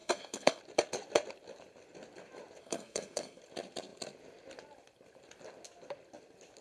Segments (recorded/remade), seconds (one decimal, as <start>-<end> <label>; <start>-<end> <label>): 0.0-0.6 remade; 0.6-2.6 recorded; 2.6-3.4 remade; 3.4-6.6 recorded